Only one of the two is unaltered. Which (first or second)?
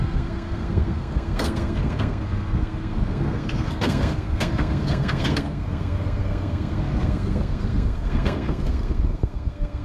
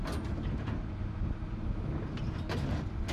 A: second